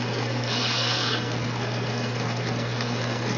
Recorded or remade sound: remade